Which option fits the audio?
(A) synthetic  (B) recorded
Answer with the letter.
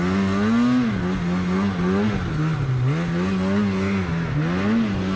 B